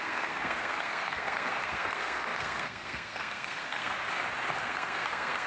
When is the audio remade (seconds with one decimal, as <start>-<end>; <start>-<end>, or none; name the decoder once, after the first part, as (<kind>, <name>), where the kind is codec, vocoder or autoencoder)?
0.0-4.0 (codec, SNAC); 4.6-5.5